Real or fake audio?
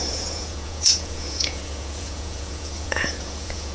fake